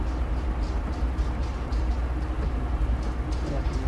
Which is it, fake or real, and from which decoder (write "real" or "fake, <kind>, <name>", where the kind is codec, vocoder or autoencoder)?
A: real